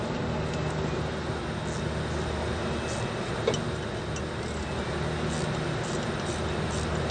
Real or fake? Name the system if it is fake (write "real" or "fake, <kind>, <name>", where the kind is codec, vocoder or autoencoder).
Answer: real